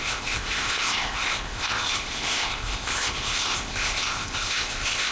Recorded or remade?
remade